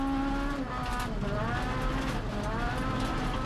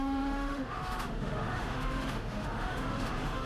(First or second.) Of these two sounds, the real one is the first